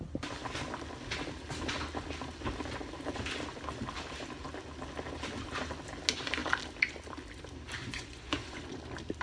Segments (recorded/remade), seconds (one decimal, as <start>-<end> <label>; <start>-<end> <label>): 0.0-7.8 recorded; 7.8-8.6 remade; 8.6-9.2 recorded